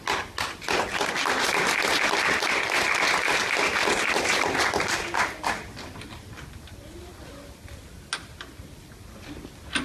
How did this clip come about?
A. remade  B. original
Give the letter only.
B